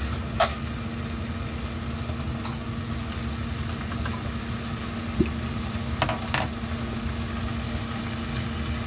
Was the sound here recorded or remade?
recorded